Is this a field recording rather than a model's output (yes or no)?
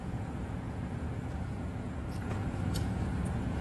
no